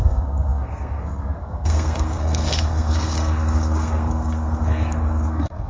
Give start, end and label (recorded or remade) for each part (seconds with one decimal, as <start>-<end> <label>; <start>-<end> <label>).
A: 0.0-5.7 remade